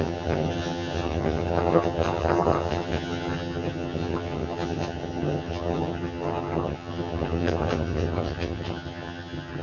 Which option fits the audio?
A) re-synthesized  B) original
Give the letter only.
A